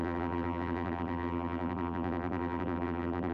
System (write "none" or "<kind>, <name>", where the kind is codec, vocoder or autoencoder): vocoder, BigVGAN v2